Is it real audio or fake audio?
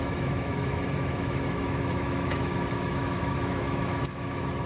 fake